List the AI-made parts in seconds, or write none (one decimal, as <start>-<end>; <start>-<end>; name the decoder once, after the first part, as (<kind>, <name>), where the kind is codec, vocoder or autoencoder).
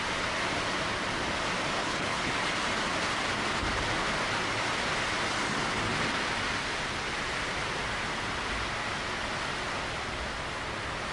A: 1.8-2.3 (codec, HILCodec)